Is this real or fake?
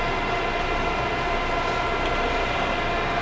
real